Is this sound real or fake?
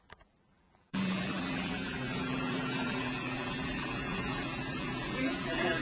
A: fake